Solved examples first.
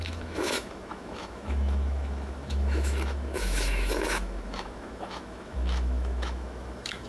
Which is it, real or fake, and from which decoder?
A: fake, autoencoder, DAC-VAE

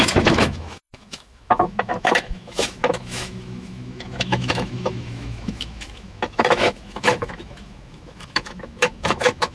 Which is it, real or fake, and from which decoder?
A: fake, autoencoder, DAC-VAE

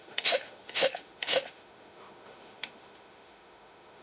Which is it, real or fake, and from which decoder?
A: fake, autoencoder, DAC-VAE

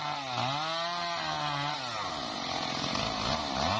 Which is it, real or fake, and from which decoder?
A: real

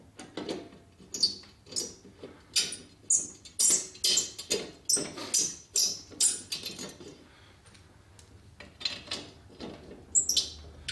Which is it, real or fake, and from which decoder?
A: real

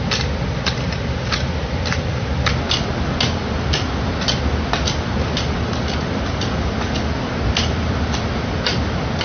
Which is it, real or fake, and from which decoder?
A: real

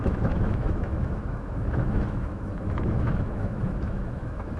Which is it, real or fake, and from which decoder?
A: fake, autoencoder, DAC-VAE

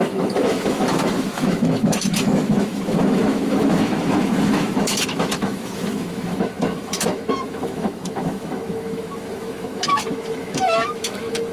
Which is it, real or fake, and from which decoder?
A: fake, autoencoder, DAC-VAE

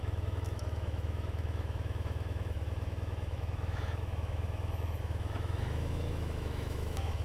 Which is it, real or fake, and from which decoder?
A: fake, autoencoder, DAC-VAE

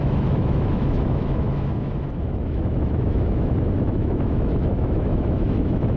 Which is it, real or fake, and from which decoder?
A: fake, autoencoder, DAC-VAE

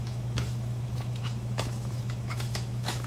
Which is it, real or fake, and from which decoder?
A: fake, autoencoder, DAC-VAE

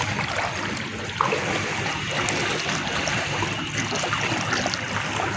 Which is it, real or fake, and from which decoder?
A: real